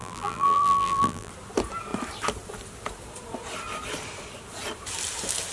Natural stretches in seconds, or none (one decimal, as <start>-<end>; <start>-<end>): 1.3-5.5